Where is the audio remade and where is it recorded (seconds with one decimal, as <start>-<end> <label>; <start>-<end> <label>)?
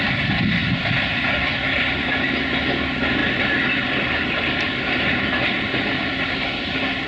0.0-7.1 recorded